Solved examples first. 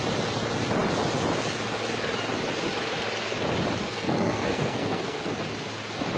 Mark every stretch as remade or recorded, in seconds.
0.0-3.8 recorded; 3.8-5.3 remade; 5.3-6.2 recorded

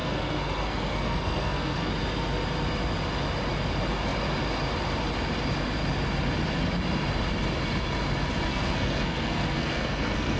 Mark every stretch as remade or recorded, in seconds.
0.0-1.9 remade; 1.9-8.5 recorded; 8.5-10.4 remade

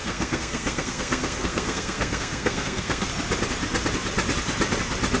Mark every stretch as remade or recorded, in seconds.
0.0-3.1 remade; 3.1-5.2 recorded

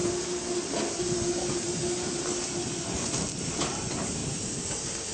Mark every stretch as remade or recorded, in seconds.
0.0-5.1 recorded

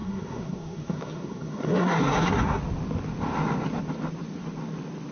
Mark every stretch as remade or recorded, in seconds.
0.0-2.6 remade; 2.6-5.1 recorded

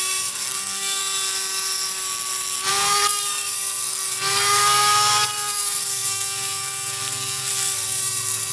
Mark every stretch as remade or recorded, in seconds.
0.0-1.0 remade; 1.0-2.7 recorded; 2.7-8.5 remade

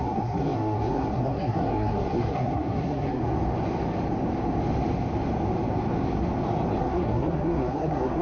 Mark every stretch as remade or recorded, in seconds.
0.0-3.2 remade; 3.2-6.8 recorded; 6.8-8.2 remade

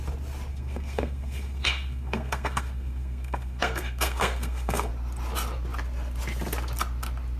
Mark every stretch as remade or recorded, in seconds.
0.0-0.5 recorded; 0.5-4.9 remade; 4.9-7.4 recorded